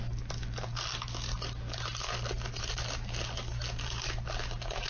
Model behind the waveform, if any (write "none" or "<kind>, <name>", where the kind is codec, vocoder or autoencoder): none